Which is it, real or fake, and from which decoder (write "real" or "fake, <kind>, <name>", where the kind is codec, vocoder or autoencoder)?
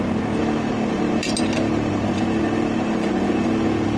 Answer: real